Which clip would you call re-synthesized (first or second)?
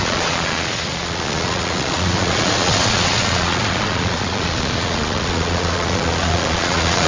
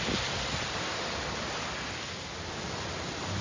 first